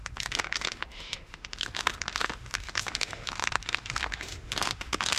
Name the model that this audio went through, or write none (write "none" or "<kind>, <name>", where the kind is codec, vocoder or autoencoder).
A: autoencoder, DAC-VAE